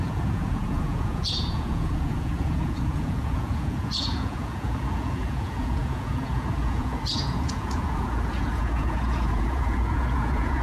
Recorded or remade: remade